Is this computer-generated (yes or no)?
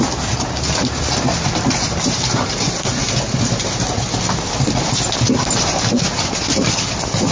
no